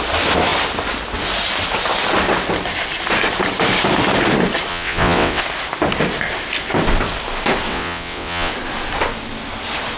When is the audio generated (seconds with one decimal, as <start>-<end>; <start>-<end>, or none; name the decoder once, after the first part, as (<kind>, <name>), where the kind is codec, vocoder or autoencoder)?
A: 4.7-5.4 (vocoder, WaveNeXt); 7.7-8.5